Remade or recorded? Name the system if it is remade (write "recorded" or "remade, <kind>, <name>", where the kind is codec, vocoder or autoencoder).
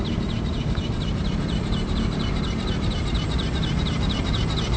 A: recorded